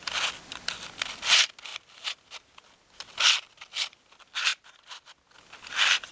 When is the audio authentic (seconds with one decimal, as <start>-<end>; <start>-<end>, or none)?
0.0-6.1